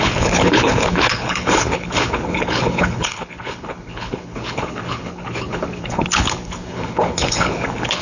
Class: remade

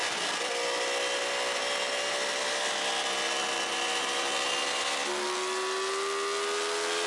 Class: recorded